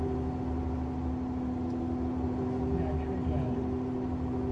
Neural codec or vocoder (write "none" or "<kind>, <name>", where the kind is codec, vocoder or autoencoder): none